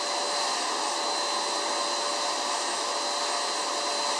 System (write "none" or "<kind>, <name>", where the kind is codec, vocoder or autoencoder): none